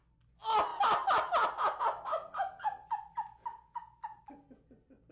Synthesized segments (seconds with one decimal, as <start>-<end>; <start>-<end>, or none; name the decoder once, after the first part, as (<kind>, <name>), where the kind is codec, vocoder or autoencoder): 3.5-4.2 (vocoder, Vocos)